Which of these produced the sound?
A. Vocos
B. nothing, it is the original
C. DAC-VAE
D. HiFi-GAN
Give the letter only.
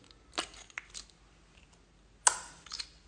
B